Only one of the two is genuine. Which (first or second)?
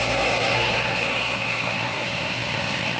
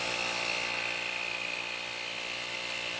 second